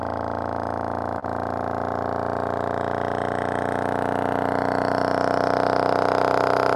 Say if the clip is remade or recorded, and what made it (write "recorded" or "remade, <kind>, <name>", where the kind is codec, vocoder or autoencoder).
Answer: recorded